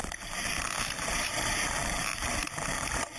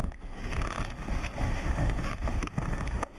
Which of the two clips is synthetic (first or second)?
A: second